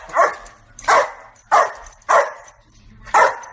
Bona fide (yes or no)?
no